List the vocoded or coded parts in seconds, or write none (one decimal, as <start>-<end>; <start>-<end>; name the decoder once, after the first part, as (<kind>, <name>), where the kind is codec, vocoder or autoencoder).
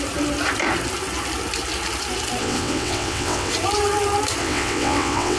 2.4-3.5 (vocoder, WaveNeXt); 4.4-5.4